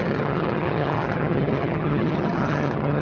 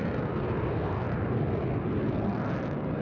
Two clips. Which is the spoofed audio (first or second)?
first